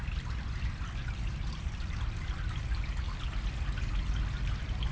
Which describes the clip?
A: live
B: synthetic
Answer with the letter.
A